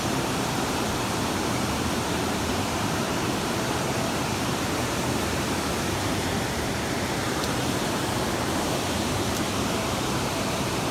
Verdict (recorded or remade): remade